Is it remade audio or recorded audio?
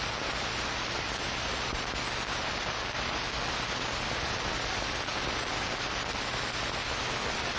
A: recorded